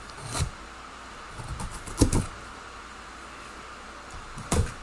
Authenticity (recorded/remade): recorded